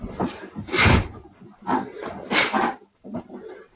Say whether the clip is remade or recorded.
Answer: remade